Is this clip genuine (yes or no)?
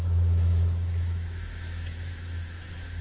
no